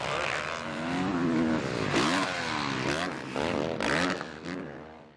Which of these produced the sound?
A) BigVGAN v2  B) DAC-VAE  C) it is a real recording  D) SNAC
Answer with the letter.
C